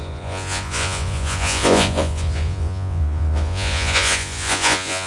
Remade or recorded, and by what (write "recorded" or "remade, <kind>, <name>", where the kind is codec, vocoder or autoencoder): remade, vocoder, Vocos